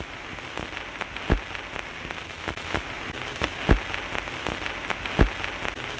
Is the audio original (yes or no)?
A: yes